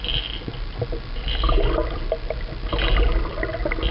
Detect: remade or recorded recorded